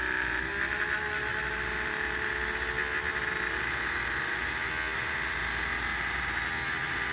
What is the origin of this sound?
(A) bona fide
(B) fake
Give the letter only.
A